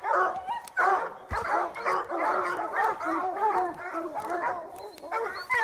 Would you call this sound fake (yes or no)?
yes